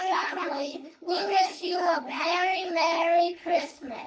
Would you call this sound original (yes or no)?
no